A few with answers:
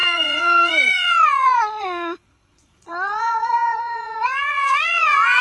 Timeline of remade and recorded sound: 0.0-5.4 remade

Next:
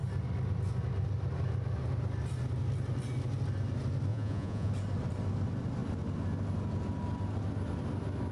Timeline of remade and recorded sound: 0.0-4.1 recorded; 4.1-4.7 remade; 4.7-8.3 recorded